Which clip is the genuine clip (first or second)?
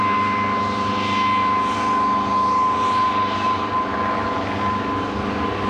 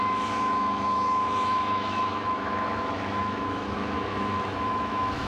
first